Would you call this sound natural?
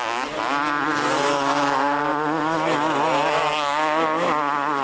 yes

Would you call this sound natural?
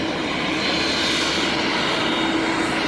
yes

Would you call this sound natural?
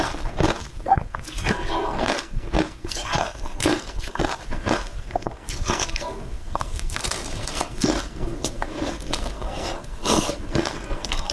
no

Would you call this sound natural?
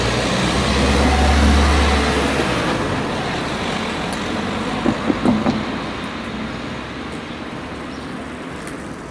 yes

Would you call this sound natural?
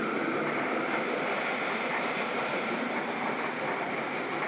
yes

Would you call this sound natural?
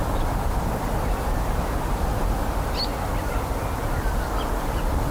yes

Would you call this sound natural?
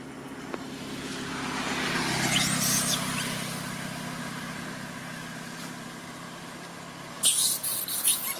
yes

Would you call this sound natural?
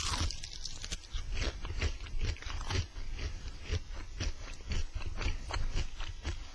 no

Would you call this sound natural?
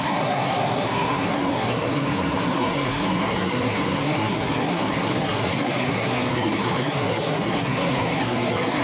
no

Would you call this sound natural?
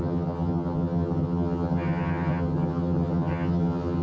no